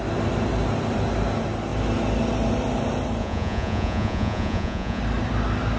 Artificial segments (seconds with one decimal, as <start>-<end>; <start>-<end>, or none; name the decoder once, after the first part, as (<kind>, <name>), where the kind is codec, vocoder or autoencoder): 3.2-5.0 (vocoder, Vocos)